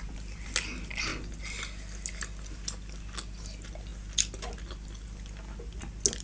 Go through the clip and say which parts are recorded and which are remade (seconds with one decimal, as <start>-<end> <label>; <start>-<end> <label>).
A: 0.0-6.2 recorded